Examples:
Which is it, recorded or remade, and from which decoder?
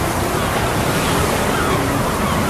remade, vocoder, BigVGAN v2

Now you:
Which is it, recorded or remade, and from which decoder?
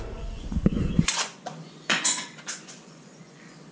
remade, vocoder, Vocos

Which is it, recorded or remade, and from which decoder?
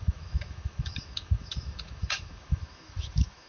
remade, autoencoder, DAC-VAE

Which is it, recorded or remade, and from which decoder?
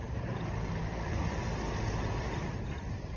recorded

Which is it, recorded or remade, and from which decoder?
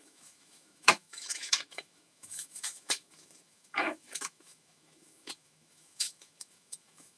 remade, autoencoder, DAC-VAE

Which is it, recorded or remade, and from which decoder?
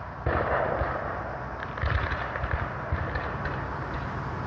recorded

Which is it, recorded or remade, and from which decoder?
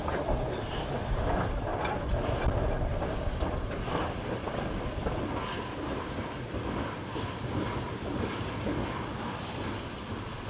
recorded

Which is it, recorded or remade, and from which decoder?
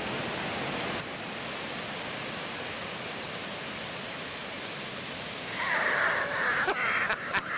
recorded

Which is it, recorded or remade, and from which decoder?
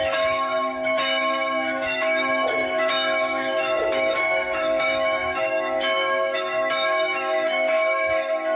remade, autoencoder, DAC-VAE